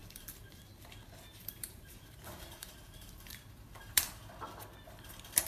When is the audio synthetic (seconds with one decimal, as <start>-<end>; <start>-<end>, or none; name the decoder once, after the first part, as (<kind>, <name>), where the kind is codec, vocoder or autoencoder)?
0.0-0.6 (vocoder, BigVGAN v2); 1.3-4.1